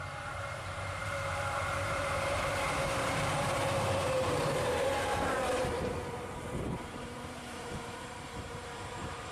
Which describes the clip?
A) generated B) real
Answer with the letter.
A